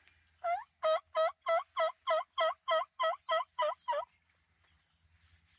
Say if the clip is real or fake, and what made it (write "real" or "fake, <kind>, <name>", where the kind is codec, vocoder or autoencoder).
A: real